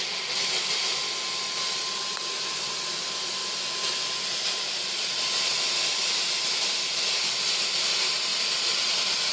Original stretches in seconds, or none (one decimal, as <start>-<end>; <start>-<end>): 0.0-9.3